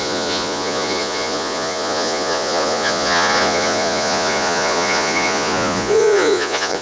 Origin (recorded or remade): remade